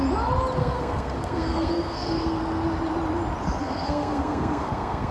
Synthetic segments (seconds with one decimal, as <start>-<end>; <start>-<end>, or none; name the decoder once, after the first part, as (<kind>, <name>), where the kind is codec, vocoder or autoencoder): 0.6-2.4 (codec, SNAC); 3.6-5.1